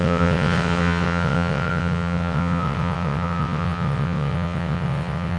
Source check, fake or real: fake